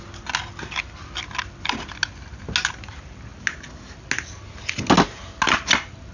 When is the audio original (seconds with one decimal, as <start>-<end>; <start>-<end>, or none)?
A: 0.0-6.1